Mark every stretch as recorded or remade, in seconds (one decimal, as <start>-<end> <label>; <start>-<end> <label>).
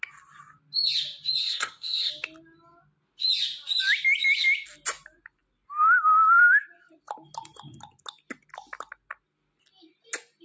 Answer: 0.0-1.4 recorded; 1.4-2.1 remade; 2.1-10.4 recorded